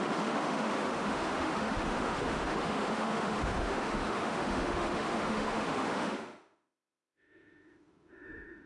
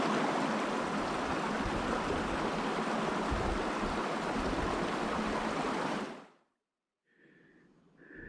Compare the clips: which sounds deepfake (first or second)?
first